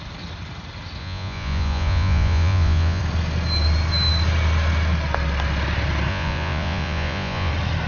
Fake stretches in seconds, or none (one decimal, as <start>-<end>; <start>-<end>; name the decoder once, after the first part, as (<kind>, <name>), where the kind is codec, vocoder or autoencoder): 1.0-3.0 (vocoder, Vocos); 6.1-7.5